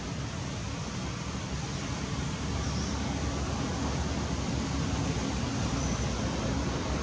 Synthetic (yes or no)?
no